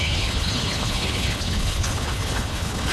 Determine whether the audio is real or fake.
fake